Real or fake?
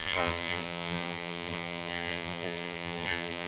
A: fake